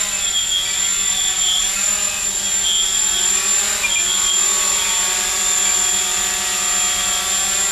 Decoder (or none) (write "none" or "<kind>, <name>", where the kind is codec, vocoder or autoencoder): none